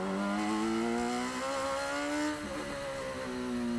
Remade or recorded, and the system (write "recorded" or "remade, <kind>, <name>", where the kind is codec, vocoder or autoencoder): recorded